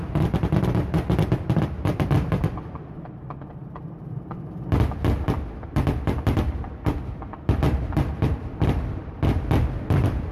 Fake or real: fake